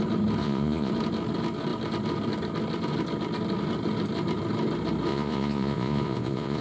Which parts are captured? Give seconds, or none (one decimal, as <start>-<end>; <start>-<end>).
0.0-0.4; 0.9-5.1